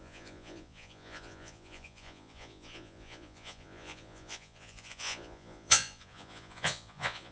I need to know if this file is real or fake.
fake